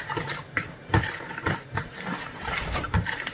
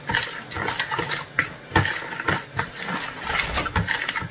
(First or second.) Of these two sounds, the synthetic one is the first